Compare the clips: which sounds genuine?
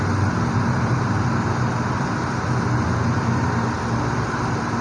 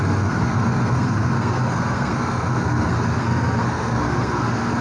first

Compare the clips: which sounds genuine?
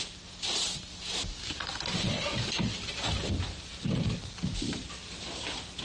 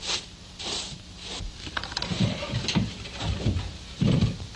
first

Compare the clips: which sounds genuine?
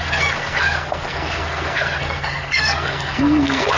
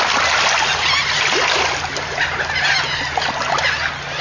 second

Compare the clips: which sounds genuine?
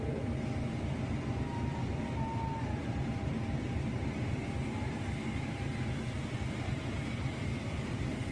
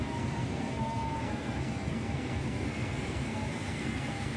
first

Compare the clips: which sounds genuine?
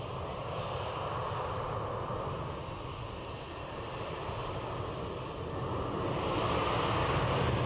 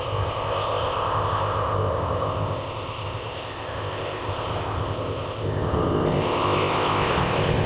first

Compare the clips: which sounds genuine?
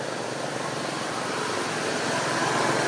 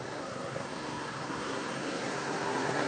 first